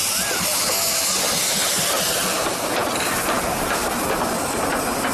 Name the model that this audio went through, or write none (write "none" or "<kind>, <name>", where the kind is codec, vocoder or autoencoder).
none